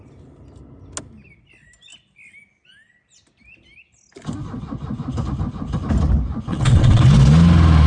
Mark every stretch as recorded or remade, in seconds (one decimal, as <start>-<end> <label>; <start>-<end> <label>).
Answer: 0.0-6.5 recorded; 6.5-7.0 remade; 7.0-7.9 recorded